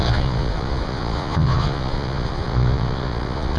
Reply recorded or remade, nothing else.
remade